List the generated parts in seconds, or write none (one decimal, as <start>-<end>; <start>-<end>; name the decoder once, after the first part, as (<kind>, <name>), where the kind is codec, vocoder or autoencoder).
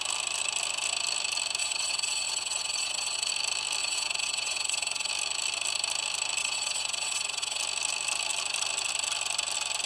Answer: 1.6-3.3 (vocoder, WaveNeXt); 3.8-5.1; 6.4-7.6